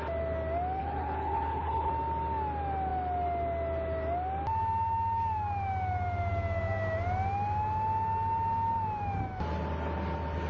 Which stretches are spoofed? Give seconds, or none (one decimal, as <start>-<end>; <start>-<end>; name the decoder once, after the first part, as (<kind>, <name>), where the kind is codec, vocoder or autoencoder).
0.8-1.9 (codec, HILCodec)

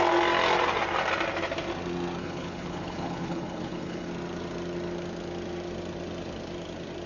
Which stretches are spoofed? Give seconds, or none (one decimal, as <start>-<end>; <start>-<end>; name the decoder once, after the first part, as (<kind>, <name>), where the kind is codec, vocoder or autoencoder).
2.2-4.1 (codec, HILCodec)

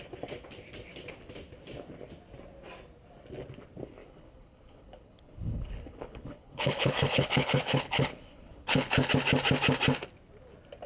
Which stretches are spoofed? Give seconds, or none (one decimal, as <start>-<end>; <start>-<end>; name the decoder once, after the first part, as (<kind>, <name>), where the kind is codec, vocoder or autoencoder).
4.0-9.1 (codec, HILCodec)

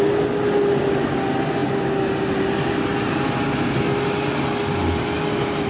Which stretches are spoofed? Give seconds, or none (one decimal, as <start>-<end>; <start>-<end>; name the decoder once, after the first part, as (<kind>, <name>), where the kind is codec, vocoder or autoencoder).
none

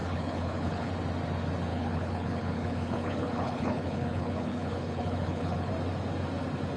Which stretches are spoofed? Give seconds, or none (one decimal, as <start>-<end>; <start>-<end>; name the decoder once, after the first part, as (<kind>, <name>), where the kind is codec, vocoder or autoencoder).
0.0-0.9 (codec, HILCodec); 1.7-5.7

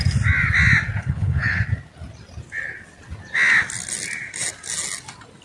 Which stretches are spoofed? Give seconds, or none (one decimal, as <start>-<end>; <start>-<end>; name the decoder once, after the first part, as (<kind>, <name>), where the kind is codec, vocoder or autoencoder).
1.0-1.6 (codec, HILCodec)